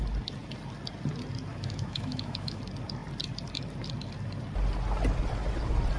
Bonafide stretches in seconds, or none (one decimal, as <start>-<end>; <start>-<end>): 0.0-1.5; 2.6-6.0